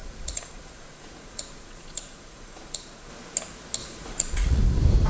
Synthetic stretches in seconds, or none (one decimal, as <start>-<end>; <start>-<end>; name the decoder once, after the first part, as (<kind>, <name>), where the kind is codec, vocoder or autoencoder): 0.0-3.1 (vocoder, Vocos); 3.8-4.6